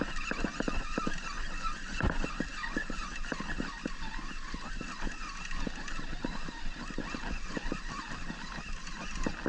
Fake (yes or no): no